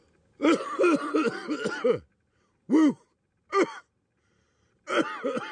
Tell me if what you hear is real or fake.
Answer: real